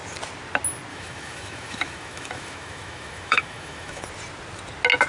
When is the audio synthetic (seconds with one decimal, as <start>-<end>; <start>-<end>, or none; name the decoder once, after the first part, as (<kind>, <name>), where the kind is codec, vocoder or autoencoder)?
0.9-4.0 (autoencoder, DAC-VAE)